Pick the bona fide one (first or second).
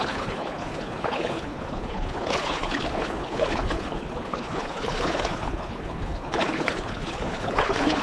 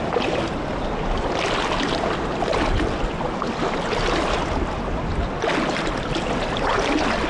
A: second